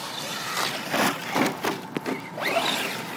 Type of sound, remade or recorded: recorded